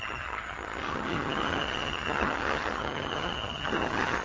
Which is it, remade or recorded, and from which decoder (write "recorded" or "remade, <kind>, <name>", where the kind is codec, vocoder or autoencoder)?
remade, vocoder, HiFi-GAN